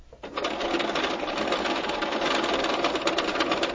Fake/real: real